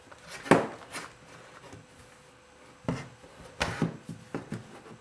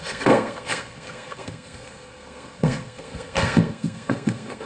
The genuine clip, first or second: first